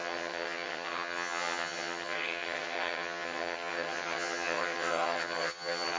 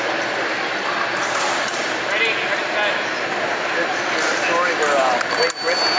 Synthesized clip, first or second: first